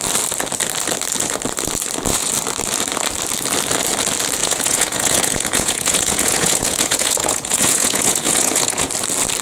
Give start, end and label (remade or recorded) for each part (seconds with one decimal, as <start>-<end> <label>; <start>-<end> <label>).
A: 0.0-4.4 recorded; 4.4-8.9 remade; 8.9-9.4 recorded